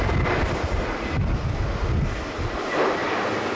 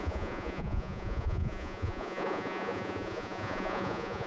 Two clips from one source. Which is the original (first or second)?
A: first